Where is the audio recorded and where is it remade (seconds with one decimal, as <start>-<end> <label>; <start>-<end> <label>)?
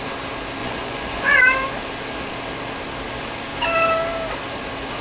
0.0-0.6 recorded; 0.6-1.4 remade; 1.4-5.0 recorded